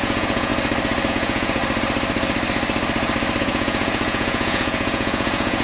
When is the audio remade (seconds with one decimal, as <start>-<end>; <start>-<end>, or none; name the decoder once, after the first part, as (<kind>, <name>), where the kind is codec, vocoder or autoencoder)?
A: 0.0-0.5 (vocoder, Vocos); 1.1-1.6; 3.4-5.6